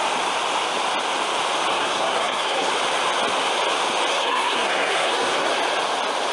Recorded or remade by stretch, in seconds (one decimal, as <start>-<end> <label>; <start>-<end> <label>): 0.0-1.7 recorded; 1.7-2.7 remade; 2.7-4.1 recorded; 4.1-5.5 remade; 5.5-6.3 recorded